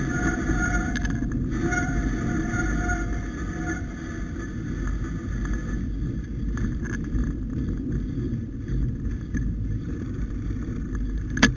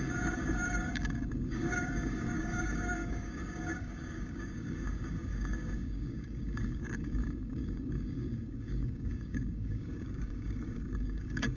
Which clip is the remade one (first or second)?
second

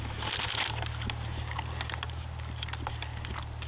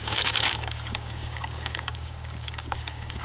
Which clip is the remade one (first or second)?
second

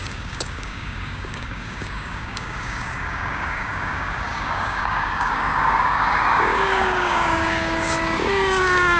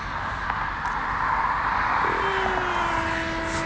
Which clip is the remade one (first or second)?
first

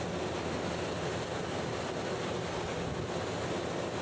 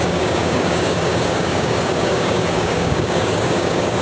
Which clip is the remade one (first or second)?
second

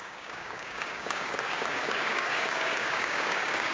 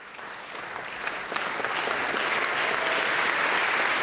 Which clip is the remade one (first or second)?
first